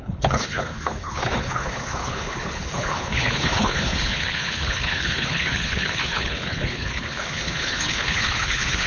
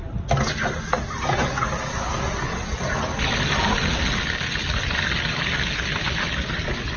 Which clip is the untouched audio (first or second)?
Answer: second